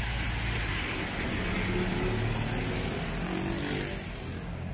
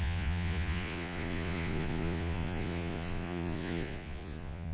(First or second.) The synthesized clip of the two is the second